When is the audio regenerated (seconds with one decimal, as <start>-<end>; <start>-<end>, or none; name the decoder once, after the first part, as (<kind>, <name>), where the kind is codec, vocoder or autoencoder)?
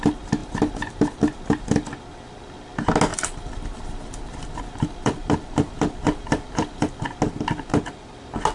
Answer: 0.4-1.2 (vocoder, BigVGAN v2); 3.1-7.0